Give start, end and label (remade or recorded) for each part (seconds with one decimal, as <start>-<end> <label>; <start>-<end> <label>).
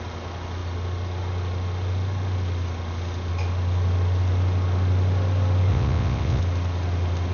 0.0-5.7 recorded; 5.7-6.4 remade; 6.4-7.3 recorded